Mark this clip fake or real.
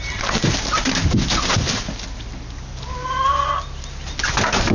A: real